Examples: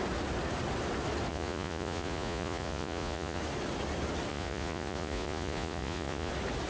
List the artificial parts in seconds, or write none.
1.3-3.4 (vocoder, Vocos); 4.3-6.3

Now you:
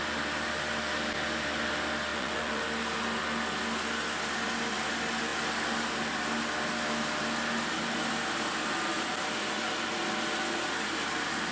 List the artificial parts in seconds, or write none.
2.1-2.6 (vocoder, Vocos)